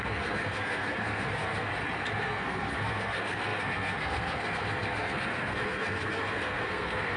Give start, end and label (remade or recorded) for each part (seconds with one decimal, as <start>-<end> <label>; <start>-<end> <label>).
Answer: 0.0-1.7 remade; 1.7-2.2 recorded; 2.2-7.2 remade